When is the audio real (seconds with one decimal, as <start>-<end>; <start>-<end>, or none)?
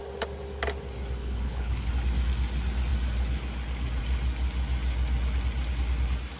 0.0-1.2; 1.9-6.4